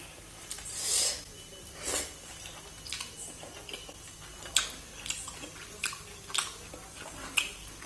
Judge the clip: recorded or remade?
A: recorded